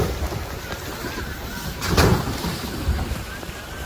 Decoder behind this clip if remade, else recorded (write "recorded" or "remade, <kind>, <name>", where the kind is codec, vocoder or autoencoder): remade, vocoder, BigVGAN v2